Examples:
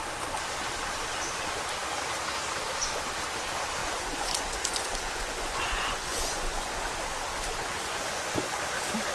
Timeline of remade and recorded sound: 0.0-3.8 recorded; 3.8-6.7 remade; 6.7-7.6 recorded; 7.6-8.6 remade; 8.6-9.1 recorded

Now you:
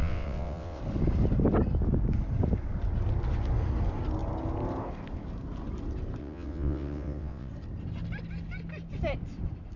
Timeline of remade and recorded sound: 0.0-0.8 remade; 0.8-6.2 recorded; 6.2-7.5 remade; 7.5-9.8 recorded

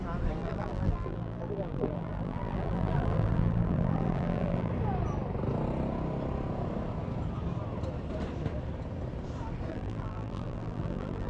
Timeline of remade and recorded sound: 0.0-0.4 recorded; 0.4-4.7 remade; 4.7-9.7 recorded; 9.7-11.3 remade

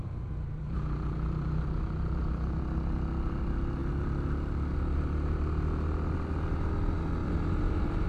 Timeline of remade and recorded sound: 0.0-2.6 remade; 2.6-7.2 recorded; 7.2-8.1 remade

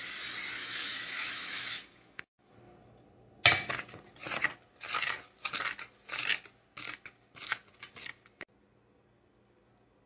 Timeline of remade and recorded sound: 0.0-0.6 recorded; 0.6-2.5 remade; 2.5-10.1 recorded

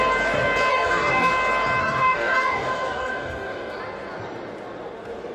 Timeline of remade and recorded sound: 0.0-0.7 recorded; 0.7-1.3 remade; 1.3-1.8 recorded; 1.8-3.8 remade; 3.8-5.3 recorded

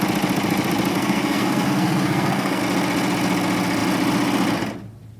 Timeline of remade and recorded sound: 0.0-0.9 recorded; 0.9-2.6 remade; 2.6-5.2 recorded

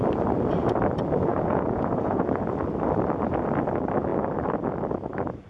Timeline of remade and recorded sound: 0.0-1.3 recorded; 1.3-2.4 remade; 2.4-5.5 recorded